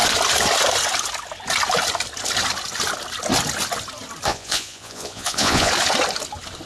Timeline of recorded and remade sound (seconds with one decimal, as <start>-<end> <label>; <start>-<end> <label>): 0.0-4.3 recorded; 4.3-5.7 remade; 5.7-6.7 recorded